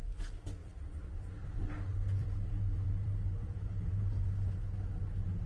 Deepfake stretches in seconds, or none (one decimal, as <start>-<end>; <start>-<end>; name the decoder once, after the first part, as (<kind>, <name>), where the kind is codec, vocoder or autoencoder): 0.6-3.9 (vocoder, BigVGAN v2)